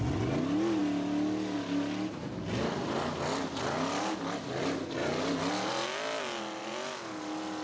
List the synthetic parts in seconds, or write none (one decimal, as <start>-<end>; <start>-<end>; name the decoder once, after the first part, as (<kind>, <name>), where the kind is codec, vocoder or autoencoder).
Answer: none